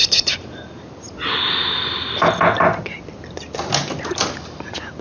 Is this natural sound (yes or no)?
yes